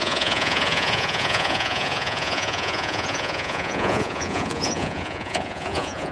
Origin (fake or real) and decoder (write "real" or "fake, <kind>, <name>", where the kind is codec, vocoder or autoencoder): fake, vocoder, Vocos